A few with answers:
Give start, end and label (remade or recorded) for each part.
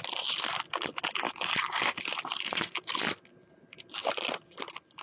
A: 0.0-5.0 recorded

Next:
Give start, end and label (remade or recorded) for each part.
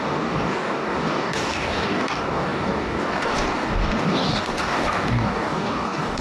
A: 0.0-6.2 remade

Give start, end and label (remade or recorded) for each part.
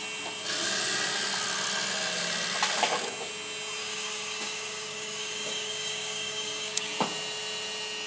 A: 0.0-3.8 recorded; 3.8-6.9 remade; 6.9-8.1 recorded